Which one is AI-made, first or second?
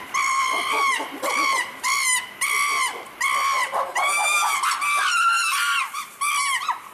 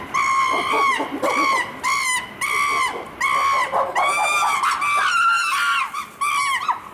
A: first